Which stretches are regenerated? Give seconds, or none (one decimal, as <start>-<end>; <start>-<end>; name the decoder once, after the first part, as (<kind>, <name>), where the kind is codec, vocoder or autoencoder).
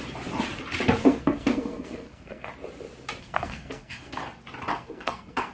1.0-2.5 (codec, SNAC); 3.2-4.2; 4.7-5.5